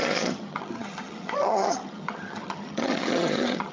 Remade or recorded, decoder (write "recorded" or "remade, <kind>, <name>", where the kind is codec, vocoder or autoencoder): remade, vocoder, HiFi-GAN